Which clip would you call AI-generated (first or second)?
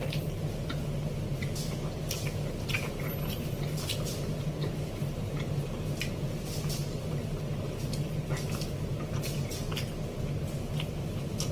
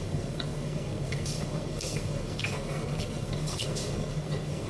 second